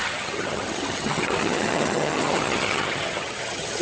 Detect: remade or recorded remade